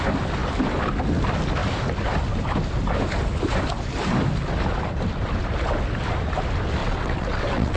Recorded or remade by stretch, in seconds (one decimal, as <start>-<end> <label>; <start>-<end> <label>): 0.0-6.8 recorded; 6.8-7.8 remade